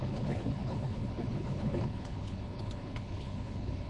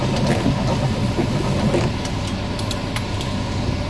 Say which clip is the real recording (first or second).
second